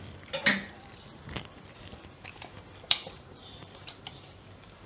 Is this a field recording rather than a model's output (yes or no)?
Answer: no